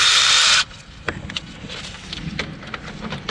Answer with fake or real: real